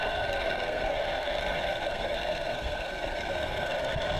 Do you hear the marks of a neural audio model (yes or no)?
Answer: yes